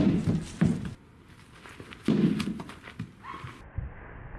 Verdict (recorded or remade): recorded